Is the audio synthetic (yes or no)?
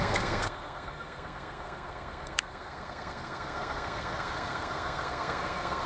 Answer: yes